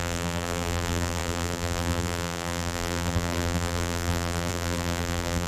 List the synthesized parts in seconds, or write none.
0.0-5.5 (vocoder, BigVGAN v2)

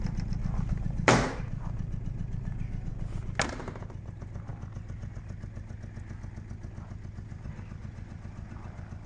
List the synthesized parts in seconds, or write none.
none

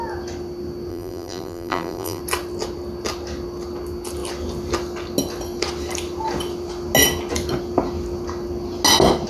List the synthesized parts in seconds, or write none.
0.9-2.2 (vocoder, BigVGAN v2)

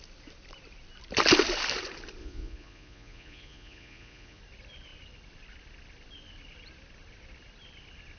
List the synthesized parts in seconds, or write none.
2.2-4.4 (vocoder, Vocos)

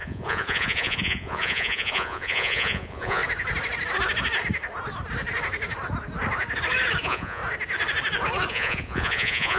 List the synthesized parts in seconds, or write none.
0.0-3.2 (vocoder, Vocos); 7.0-7.4; 8.5-9.6

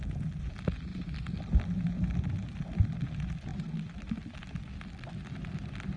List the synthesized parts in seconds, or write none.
none